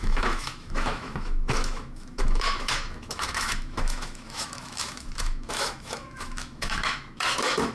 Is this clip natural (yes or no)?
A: no